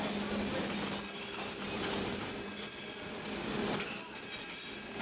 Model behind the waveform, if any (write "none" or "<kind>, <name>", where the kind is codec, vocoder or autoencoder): none